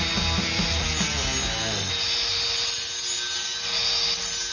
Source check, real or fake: real